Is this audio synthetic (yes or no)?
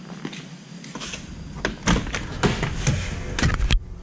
no